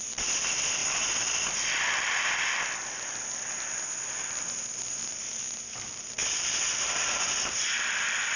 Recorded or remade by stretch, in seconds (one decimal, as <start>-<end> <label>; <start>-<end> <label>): 0.0-8.4 recorded